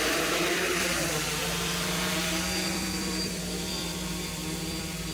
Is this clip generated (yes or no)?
yes